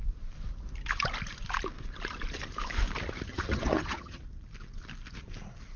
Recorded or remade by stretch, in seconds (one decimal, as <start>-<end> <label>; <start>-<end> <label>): 0.0-3.3 recorded; 3.3-4.2 remade; 4.2-5.8 recorded